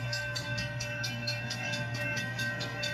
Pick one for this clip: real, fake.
fake